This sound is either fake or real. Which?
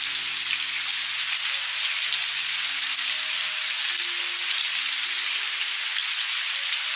real